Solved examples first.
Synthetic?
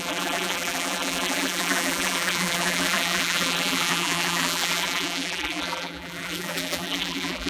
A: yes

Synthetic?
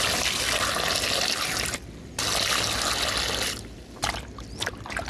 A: no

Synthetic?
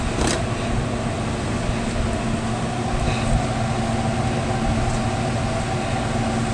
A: no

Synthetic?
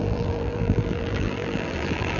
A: yes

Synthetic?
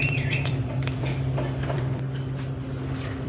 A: yes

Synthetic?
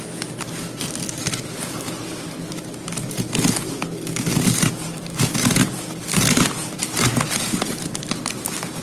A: no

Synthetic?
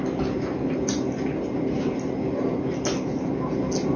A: no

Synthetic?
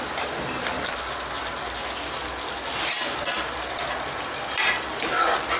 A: yes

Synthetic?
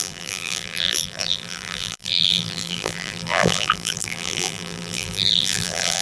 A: yes